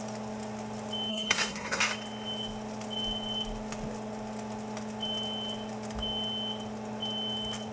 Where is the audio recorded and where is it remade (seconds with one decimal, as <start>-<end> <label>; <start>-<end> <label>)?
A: 0.0-1.1 recorded; 1.1-1.8 remade; 1.8-7.7 recorded